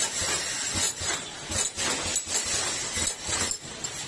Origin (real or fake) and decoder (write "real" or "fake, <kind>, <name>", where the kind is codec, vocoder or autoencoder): real